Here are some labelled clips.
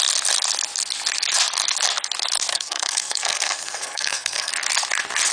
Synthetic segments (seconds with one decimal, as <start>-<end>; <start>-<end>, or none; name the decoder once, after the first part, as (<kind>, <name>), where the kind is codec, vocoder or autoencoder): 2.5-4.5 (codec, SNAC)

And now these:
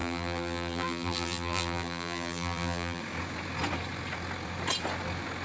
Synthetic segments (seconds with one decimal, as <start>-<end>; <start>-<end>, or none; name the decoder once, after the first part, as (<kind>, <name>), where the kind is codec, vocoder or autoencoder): 0.0-3.0 (vocoder, BigVGAN v2)

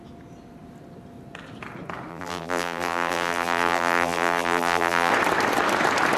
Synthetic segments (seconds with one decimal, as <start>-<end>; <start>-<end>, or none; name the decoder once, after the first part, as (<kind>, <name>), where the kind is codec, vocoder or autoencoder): 2.1-5.1 (vocoder, BigVGAN v2)

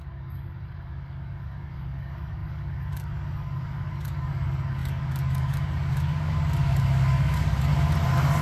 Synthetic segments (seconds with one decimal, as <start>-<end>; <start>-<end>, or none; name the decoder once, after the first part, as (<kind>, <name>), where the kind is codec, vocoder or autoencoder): 0.0-7.7 (codec, DAC)

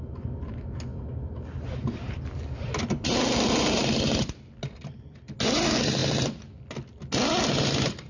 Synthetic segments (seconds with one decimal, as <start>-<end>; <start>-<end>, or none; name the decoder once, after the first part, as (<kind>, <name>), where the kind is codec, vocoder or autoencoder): none